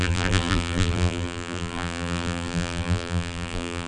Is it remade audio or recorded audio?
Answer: remade